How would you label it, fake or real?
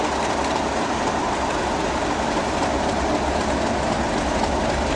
real